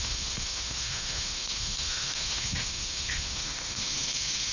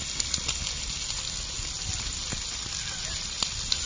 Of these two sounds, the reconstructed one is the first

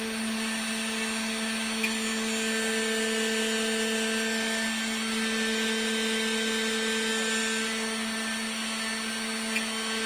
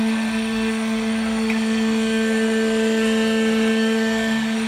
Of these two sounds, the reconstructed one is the second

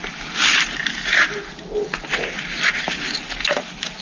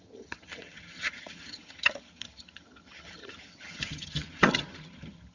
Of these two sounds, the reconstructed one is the second